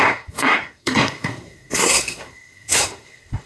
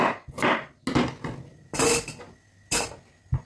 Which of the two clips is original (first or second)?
second